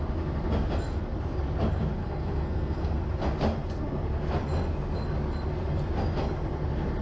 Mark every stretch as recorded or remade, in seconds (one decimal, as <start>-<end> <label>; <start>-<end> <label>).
0.0-2.0 recorded; 2.0-3.0 remade; 3.0-7.0 recorded